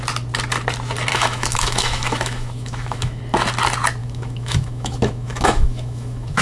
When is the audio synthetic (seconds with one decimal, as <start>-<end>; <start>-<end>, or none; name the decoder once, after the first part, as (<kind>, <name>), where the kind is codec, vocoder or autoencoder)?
1.1-3.2 (autoencoder, DAC-VAE); 4.0-6.4